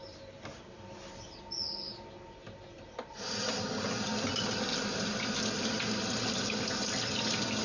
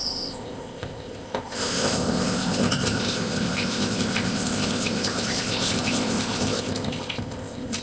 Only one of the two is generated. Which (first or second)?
second